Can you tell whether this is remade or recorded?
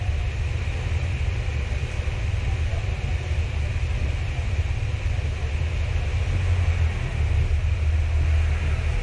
recorded